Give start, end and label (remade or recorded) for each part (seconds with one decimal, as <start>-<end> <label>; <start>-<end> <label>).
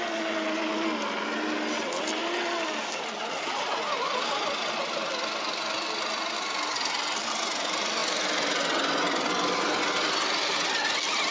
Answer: 0.0-11.3 recorded